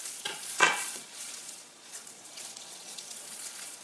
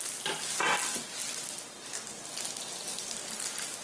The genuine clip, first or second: second